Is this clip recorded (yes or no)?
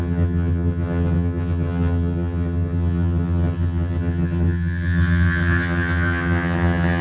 no